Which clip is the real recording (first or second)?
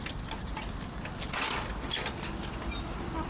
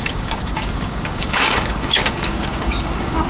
first